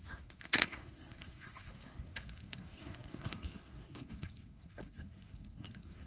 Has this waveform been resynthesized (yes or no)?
yes